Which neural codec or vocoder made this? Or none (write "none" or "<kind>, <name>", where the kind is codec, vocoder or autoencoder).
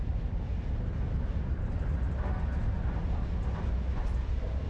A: none